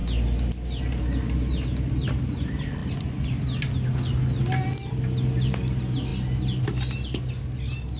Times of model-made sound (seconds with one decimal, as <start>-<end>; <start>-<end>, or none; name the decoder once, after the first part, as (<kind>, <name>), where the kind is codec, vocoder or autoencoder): none